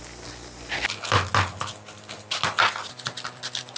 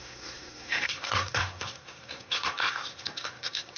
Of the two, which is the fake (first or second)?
second